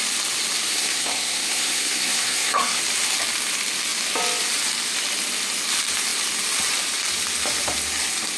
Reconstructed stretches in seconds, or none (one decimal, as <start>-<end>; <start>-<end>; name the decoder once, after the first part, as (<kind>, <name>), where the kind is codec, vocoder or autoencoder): 0.7-2.8 (codec, SNAC)